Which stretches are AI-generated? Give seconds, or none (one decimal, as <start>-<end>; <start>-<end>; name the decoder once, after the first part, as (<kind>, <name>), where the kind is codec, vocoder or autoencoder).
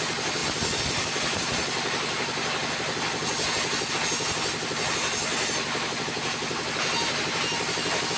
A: none